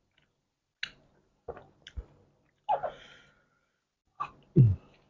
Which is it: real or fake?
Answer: real